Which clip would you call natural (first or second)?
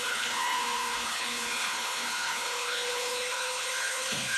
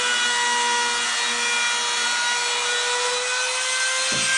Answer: second